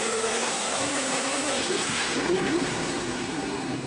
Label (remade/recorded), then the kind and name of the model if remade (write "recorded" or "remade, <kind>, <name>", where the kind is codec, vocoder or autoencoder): remade, codec, SNAC